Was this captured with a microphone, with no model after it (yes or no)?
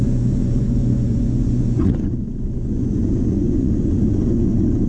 no